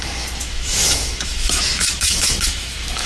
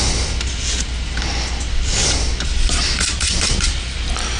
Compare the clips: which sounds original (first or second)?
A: second